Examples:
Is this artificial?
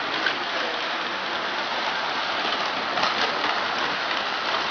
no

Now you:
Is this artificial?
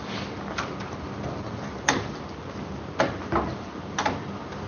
no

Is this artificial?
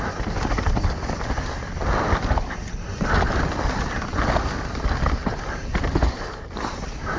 no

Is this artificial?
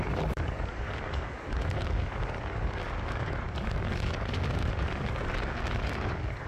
yes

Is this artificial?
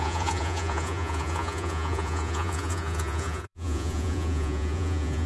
yes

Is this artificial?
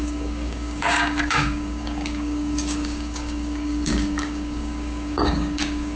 yes